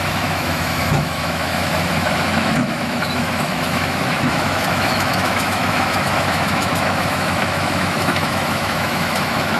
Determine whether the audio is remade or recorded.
remade